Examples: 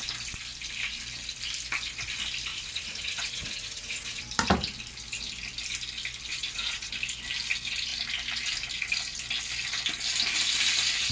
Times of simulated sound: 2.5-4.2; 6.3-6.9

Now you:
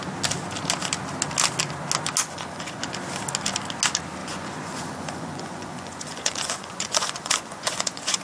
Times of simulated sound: 2.2-2.8; 4.2-8.2

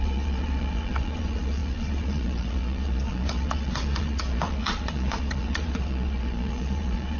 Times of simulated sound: 0.0-7.2

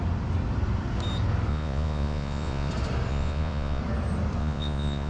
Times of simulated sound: 1.5-2.7; 3.1-3.8; 4.4-5.1